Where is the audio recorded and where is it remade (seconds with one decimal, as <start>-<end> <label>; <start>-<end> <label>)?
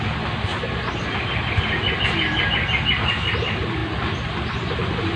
0.0-5.2 recorded